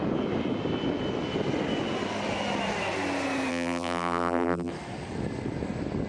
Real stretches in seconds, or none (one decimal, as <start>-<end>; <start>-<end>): 0.0-3.5; 4.7-6.1